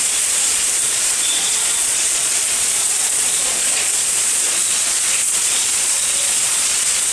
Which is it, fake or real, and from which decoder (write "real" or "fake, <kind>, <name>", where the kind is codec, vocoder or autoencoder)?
fake, vocoder, Vocos